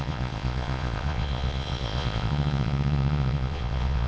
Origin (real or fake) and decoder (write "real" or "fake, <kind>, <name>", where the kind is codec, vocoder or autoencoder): fake, vocoder, Vocos